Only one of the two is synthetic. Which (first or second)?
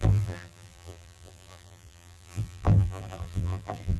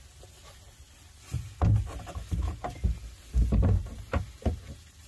first